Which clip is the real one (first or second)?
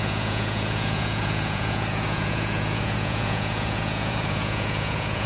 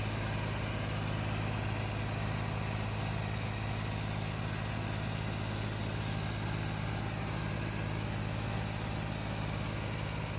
second